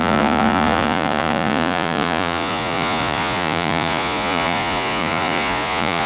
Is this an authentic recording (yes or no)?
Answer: no